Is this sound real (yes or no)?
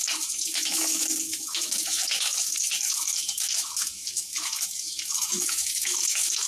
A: no